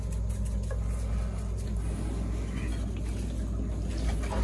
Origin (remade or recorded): recorded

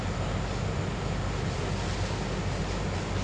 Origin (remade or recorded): recorded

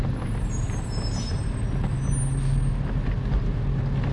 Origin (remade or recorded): recorded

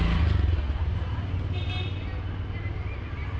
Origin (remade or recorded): recorded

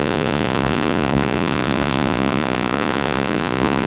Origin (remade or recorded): remade